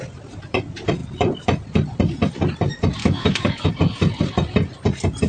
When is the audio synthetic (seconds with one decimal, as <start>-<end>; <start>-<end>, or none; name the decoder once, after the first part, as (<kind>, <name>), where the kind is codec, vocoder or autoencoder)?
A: 3.0-3.7 (autoencoder, DAC-VAE)